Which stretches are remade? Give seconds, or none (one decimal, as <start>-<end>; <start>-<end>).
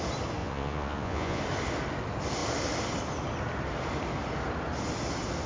0.4-1.4